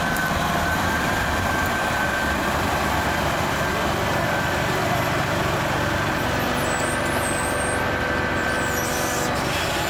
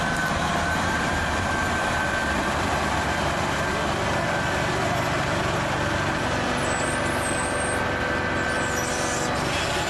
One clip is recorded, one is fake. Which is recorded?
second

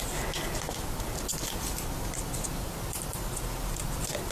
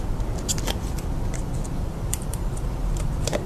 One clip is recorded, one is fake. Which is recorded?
first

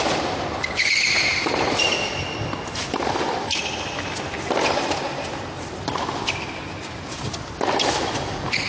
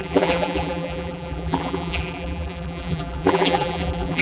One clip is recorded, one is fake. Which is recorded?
first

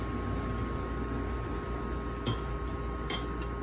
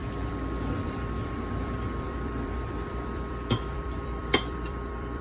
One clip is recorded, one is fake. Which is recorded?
first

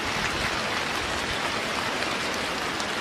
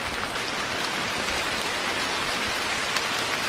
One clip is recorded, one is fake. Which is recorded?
first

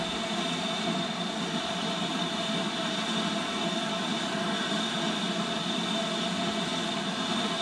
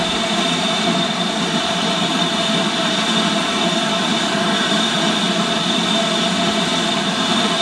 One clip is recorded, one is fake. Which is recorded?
first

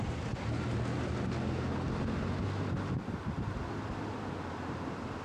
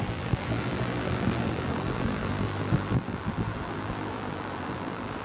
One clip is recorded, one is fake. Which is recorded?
first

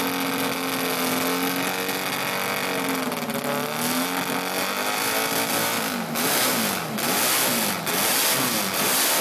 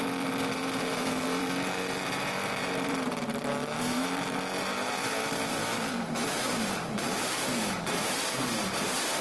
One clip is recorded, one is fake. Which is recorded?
first